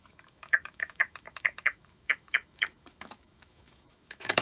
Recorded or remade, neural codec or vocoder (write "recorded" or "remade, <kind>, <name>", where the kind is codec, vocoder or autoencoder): remade, autoencoder, DAC-VAE